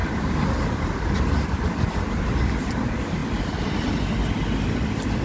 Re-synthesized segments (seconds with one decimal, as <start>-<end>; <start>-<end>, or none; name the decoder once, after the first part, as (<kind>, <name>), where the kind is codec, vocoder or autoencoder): none